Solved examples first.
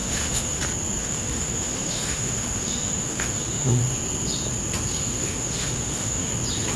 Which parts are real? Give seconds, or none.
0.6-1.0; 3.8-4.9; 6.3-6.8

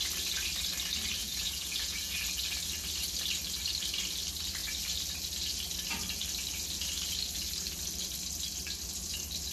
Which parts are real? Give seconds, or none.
0.0-1.2; 2.2-9.5

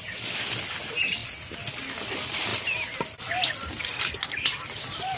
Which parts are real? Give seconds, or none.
0.0-2.5; 3.7-5.2

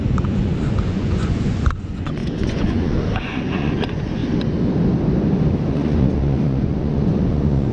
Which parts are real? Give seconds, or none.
4.2-5.7

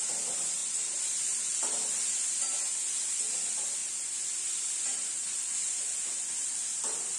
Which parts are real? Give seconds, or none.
0.0-7.2

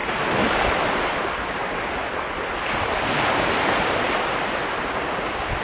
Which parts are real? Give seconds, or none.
0.0-5.6